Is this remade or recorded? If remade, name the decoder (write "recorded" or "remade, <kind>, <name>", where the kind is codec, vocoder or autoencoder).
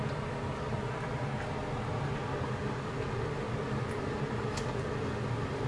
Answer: recorded